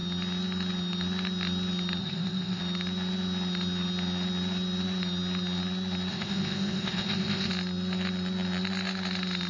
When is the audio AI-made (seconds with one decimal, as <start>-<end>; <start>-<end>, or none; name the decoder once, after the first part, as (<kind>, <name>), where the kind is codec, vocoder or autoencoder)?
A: 2.0-2.6 (codec, ZipCodec); 6.1-7.5